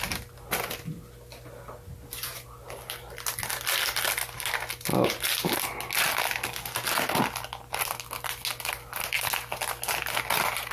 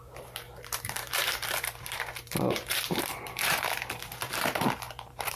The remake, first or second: second